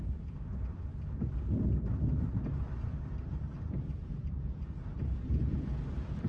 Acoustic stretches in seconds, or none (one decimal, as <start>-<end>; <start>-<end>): 0.0-2.9; 5.1-6.3